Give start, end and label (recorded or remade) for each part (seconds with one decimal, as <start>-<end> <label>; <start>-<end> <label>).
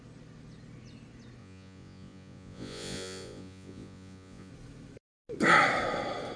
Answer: 0.0-1.4 recorded; 1.4-4.5 remade; 4.5-6.4 recorded